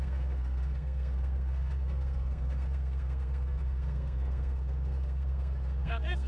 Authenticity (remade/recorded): remade